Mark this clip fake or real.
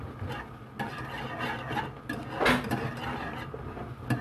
real